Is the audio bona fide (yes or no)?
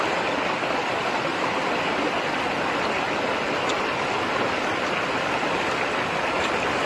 yes